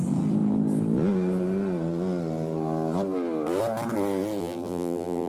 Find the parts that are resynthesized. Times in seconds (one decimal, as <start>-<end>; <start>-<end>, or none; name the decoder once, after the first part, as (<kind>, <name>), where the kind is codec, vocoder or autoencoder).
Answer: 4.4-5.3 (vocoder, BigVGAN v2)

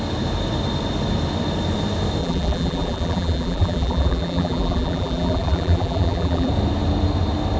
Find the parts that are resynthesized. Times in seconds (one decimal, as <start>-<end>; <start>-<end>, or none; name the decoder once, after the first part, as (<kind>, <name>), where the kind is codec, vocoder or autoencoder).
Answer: 2.2-6.5 (vocoder, BigVGAN v2)

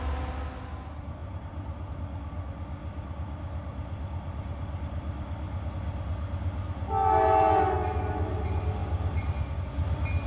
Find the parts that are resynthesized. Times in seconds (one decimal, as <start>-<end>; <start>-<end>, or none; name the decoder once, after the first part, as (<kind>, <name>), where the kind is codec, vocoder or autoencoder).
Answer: 1.2-1.9 (vocoder, BigVGAN v2)